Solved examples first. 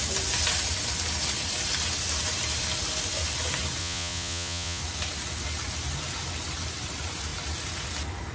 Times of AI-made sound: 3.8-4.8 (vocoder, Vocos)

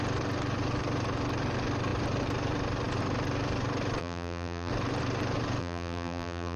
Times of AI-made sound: 4.0-4.7 (vocoder, BigVGAN v2); 5.6-6.6

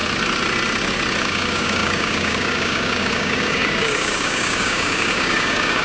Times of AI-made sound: 1.2-5.8 (codec, DAC)

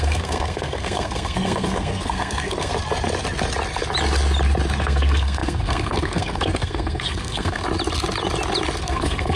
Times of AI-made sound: 0.0-2.7 (codec, SNAC); 4.8-7.6; 8.8-9.4